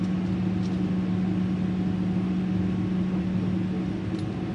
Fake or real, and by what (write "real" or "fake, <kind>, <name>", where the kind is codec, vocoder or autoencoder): real